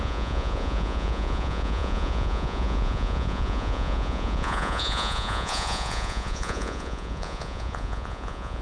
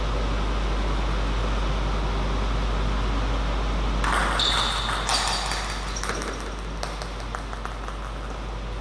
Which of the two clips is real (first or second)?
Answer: second